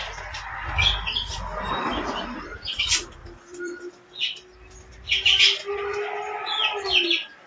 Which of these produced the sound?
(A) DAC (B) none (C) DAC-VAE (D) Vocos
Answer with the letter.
B